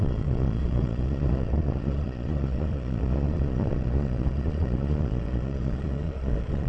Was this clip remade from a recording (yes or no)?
yes